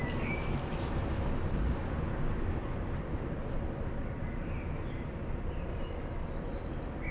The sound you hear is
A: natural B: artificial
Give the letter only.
A